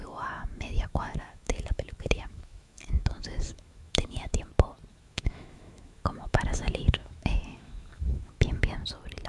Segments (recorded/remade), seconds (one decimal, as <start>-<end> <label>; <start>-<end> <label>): 0.0-4.5 remade; 4.5-4.9 recorded; 4.9-8.6 remade; 8.6-9.3 recorded